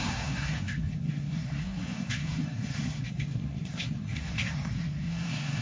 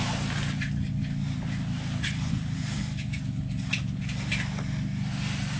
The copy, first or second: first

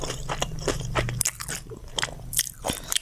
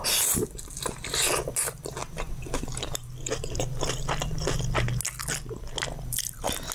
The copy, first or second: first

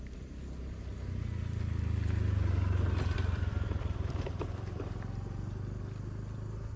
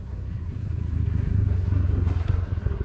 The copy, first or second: second